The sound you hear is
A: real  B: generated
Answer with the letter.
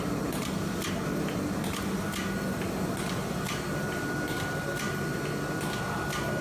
A